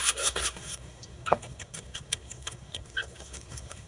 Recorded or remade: remade